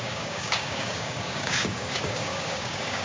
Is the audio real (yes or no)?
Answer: no